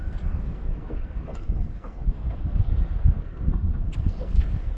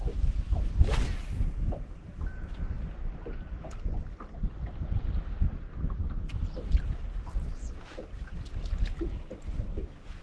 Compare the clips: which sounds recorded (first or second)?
second